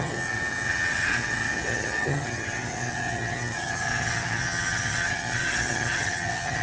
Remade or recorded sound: remade